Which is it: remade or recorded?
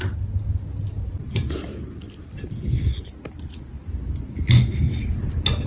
recorded